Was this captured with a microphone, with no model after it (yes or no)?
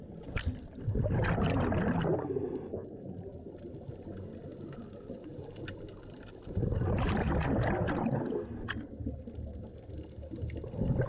yes